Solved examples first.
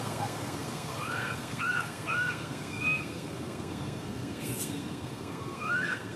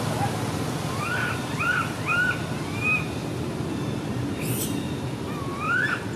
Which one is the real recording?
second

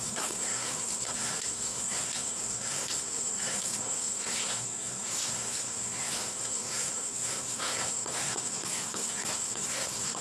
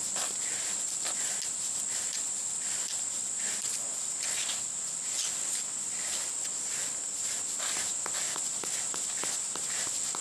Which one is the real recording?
second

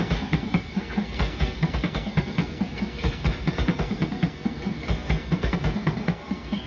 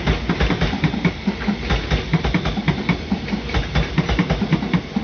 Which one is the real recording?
second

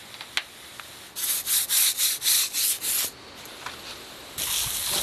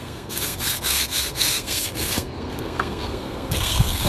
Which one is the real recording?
first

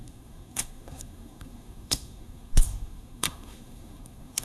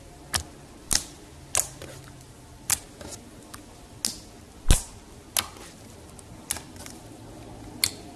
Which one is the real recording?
second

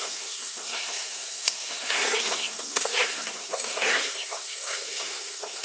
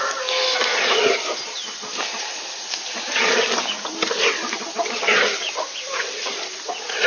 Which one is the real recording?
second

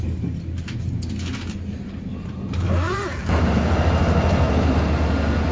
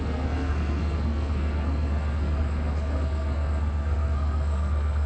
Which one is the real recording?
first